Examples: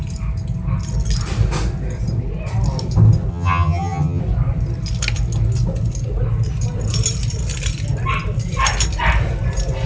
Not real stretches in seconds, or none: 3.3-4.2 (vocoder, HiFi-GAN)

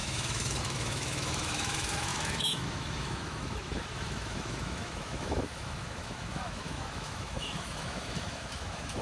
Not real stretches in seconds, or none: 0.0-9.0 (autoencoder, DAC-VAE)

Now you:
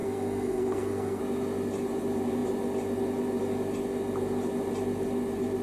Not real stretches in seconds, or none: 0.0-1.2 (codec, SNAC)

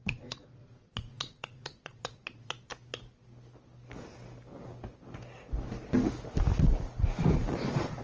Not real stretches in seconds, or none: 0.0-2.7 (vocoder, Vocos); 7.5-8.0

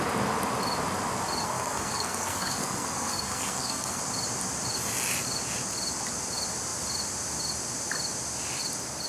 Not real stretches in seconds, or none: 1.4-4.0 (codec, SNAC)

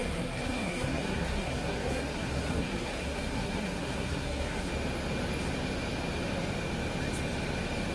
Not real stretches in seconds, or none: 0.0-4.7 (codec, SNAC)

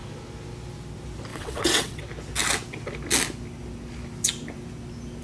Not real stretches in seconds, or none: 1.3-2.0 (vocoder, WaveNeXt)